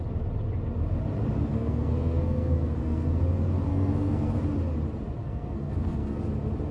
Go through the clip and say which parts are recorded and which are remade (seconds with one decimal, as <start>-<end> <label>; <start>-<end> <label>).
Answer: 0.0-1.5 recorded; 1.5-3.2 remade; 3.2-3.7 recorded; 3.7-4.4 remade; 4.4-5.2 recorded; 5.2-6.2 remade; 6.2-6.7 recorded